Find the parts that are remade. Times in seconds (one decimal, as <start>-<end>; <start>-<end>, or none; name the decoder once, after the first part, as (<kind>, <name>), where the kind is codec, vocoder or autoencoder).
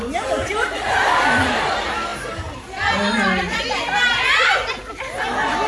none